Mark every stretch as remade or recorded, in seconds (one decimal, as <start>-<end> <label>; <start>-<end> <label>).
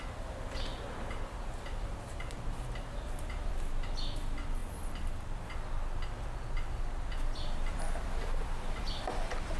0.0-0.7 recorded; 0.7-3.5 remade; 3.5-9.6 recorded